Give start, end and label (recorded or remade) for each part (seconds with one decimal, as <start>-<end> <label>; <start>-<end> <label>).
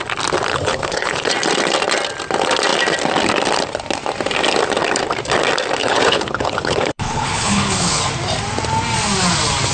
0.0-0.5 recorded; 0.5-1.3 remade; 1.3-5.8 recorded; 5.8-8.0 remade; 8.0-9.7 recorded